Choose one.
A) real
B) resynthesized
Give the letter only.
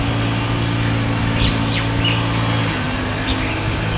A